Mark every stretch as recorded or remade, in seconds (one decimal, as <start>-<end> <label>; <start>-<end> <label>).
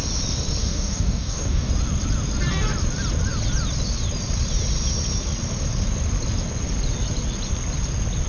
0.0-0.6 recorded; 0.6-1.7 remade; 1.7-8.3 recorded